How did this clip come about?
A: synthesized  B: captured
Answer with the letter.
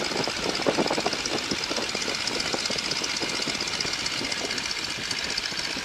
B